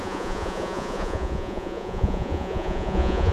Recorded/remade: remade